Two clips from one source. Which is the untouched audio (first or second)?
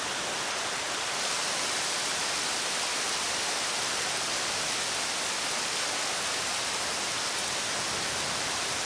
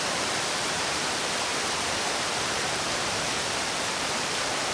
first